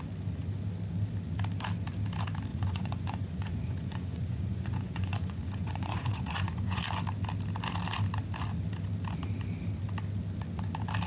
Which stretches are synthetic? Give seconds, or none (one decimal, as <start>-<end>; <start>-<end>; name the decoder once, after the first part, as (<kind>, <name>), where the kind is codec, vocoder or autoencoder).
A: 2.5-6.8 (vocoder, Vocos)